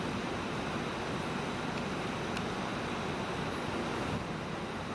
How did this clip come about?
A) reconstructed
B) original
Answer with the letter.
B